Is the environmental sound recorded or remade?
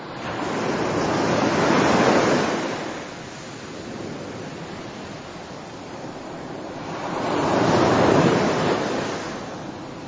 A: recorded